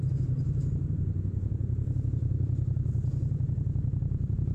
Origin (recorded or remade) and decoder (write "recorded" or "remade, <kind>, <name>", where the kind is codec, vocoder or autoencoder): remade, vocoder, BigVGAN v2